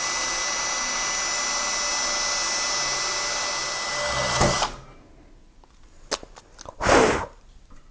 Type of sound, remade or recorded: recorded